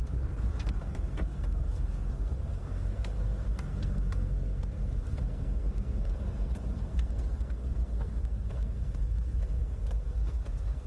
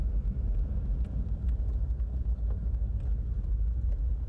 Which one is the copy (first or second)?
first